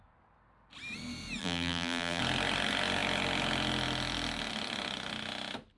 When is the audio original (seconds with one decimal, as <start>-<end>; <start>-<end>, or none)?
0.0-1.4; 2.2-5.8